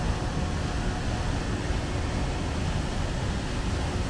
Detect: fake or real real